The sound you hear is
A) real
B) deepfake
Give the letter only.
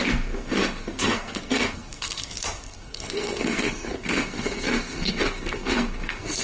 B